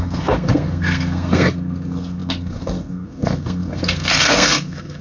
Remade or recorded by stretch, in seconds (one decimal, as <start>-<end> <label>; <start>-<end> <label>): 0.0-5.0 remade